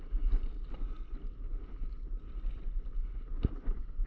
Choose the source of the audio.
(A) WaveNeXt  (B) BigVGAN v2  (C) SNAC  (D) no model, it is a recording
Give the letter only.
D